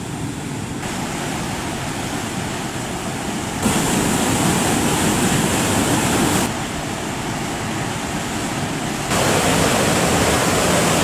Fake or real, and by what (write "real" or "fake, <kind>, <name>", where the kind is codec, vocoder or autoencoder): real